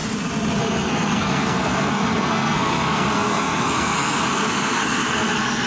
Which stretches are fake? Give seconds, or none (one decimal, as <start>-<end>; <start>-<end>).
0.6-5.7